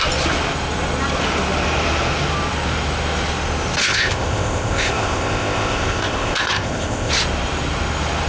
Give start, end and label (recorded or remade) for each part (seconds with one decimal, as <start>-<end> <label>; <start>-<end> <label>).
0.0-3.8 recorded; 3.8-7.1 remade; 7.1-8.3 recorded

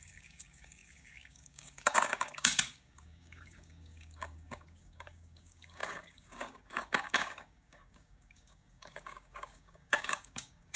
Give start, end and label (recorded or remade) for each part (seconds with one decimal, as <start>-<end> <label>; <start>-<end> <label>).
0.0-10.8 remade

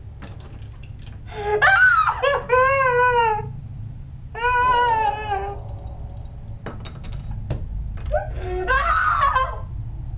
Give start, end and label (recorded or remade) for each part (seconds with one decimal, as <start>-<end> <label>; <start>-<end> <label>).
0.0-8.2 recorded; 8.2-9.1 remade; 9.1-10.2 recorded